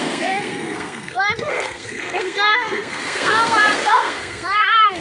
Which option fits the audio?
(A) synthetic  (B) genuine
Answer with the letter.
A